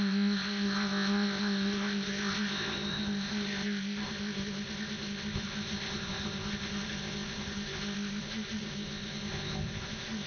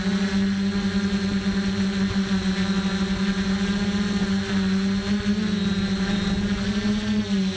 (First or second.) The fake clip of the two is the first